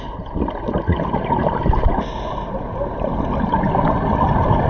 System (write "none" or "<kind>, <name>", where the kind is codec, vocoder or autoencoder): none